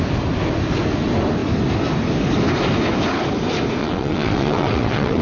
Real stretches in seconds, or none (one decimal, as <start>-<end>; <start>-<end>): 0.0-3.8